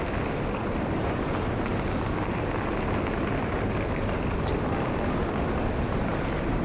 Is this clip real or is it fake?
real